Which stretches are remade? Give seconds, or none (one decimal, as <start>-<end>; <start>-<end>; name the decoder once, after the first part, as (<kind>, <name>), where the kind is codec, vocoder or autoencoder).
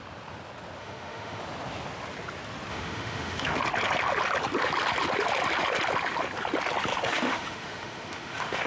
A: 0.8-1.4 (autoencoder, DAC-VAE); 2.7-3.6; 6.9-8.7